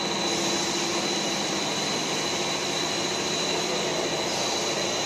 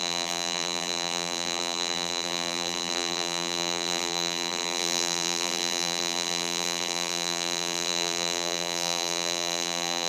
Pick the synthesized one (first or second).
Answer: second